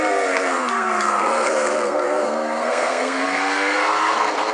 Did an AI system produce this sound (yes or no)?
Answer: yes